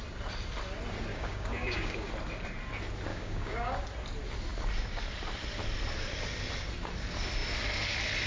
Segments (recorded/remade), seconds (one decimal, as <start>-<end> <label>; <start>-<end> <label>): 0.0-1.1 recorded; 1.1-2.1 remade; 2.1-3.1 recorded; 3.1-3.8 remade; 3.8-8.3 recorded